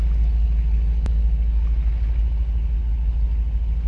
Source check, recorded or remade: recorded